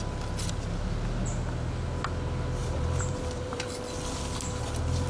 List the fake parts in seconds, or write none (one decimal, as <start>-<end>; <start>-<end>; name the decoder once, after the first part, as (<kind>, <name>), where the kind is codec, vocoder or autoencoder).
2.6-3.7 (vocoder, BigVGAN v2)